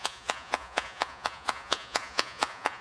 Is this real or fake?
fake